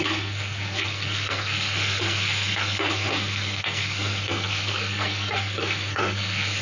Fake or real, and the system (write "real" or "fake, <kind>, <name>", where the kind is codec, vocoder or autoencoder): fake, codec, SNAC